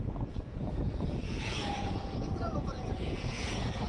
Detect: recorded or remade remade